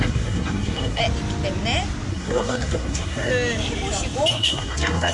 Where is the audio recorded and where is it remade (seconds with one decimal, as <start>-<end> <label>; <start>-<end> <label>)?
0.0-1.0 remade; 1.0-2.1 recorded; 2.1-3.3 remade; 3.3-4.3 recorded; 4.3-5.1 remade